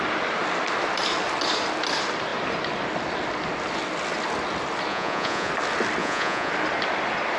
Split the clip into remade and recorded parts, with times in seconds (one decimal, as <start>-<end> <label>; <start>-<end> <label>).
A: 0.0-4.9 recorded; 4.9-5.5 remade; 5.5-6.0 recorded; 6.0-6.5 remade; 6.5-7.4 recorded